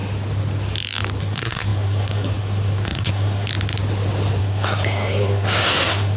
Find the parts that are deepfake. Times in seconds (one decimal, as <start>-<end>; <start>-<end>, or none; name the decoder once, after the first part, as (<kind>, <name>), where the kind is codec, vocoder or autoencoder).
1.2-3.5 (codec, SNAC); 4.4-6.2